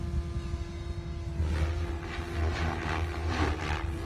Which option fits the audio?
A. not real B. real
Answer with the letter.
B